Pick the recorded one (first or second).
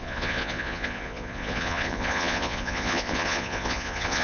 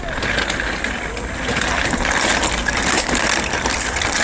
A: second